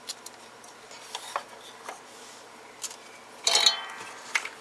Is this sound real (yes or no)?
yes